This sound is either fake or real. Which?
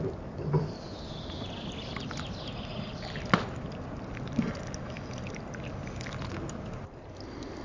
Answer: real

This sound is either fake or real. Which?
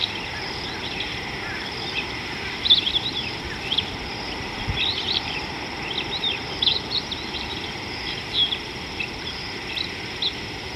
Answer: fake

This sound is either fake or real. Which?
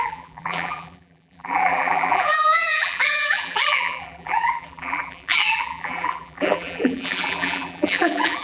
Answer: fake